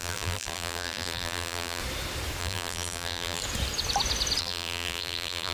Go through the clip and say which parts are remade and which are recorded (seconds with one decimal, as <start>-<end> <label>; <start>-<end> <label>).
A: 0.0-1.8 remade; 1.8-2.4 recorded; 2.4-3.4 remade; 3.4-4.4 recorded; 4.4-5.5 remade